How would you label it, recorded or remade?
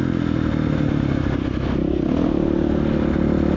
recorded